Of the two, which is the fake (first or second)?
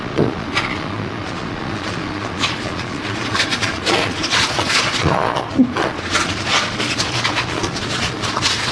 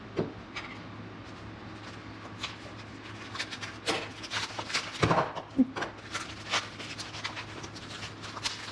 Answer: first